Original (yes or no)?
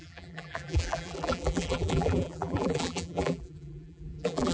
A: no